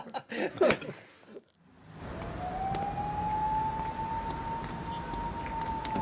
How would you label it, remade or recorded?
recorded